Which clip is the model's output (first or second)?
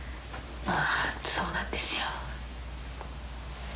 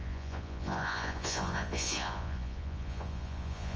second